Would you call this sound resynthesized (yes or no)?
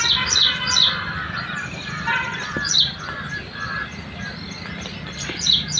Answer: no